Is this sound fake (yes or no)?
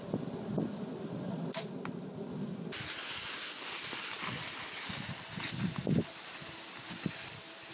no